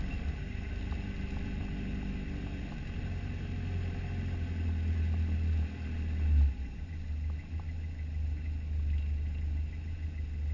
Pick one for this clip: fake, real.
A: real